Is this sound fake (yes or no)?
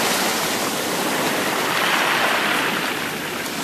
yes